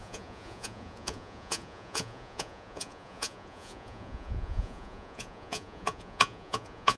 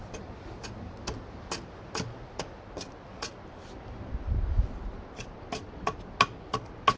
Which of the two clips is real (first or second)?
second